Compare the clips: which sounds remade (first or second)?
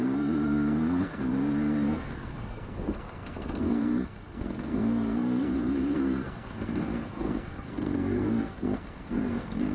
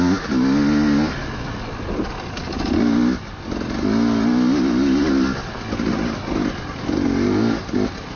first